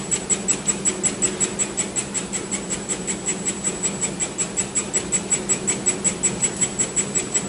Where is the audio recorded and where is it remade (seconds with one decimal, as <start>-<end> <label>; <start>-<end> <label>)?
0.0-7.5 recorded